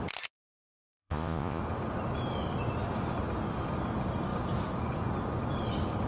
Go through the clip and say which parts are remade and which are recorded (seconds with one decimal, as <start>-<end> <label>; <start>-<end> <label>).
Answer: 0.0-0.8 recorded; 0.8-1.6 remade; 1.6-6.1 recorded

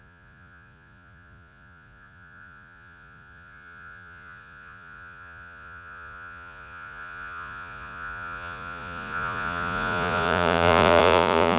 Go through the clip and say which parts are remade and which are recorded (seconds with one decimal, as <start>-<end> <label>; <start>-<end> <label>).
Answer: 0.0-11.6 remade

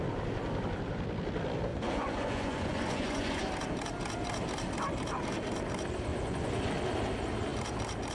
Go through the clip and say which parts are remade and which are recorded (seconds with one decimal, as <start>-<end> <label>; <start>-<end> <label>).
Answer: 0.0-1.7 recorded; 1.7-3.4 remade; 3.4-6.1 recorded; 6.1-6.6 remade; 6.6-8.1 recorded

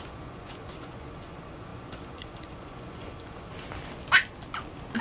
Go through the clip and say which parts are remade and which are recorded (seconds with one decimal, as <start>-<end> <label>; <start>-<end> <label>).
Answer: 0.0-3.5 remade; 3.5-5.0 recorded

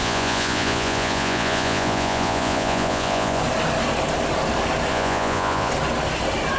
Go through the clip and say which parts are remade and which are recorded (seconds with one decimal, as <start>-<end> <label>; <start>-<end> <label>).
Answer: 0.0-3.4 remade; 3.4-4.9 recorded; 4.9-5.7 remade; 5.7-6.6 recorded

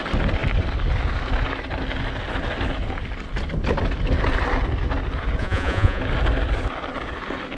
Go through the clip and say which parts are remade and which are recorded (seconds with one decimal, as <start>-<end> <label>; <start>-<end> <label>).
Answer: 0.0-5.4 recorded; 5.4-6.0 remade; 6.0-7.6 recorded

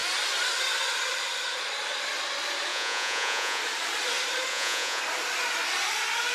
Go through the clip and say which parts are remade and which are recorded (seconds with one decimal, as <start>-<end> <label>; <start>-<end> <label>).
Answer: 0.0-2.7 recorded; 2.7-3.6 remade; 3.6-4.5 recorded; 4.5-5.0 remade; 5.0-6.3 recorded

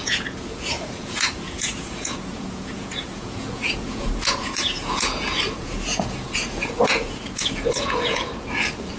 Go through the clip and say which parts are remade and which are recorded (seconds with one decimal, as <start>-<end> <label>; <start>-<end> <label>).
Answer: 0.0-8.3 remade; 8.3-9.0 recorded